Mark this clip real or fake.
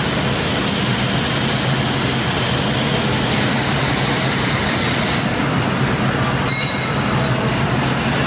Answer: real